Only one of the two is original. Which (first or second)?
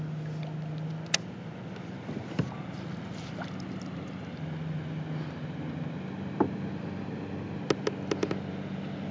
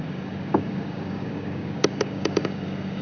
first